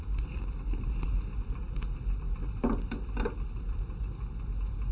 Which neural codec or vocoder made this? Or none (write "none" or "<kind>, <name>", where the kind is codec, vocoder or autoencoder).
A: none